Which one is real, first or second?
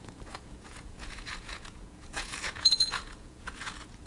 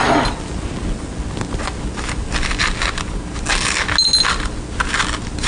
second